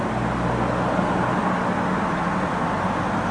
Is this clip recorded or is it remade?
recorded